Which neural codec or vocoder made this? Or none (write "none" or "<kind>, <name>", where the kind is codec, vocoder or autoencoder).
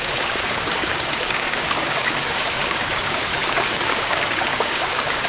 codec, DAC